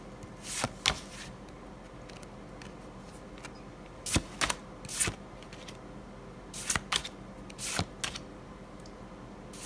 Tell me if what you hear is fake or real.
real